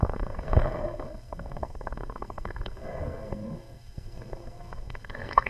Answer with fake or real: fake